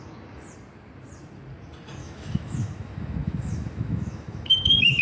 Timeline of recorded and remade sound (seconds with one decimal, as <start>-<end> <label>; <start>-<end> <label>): 0.0-2.0 recorded; 2.0-5.0 remade